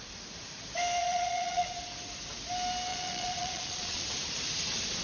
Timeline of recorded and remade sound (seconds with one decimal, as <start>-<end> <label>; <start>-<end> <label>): 0.0-1.0 recorded; 1.0-1.8 remade; 1.8-2.9 recorded; 2.9-4.0 remade; 4.0-5.0 recorded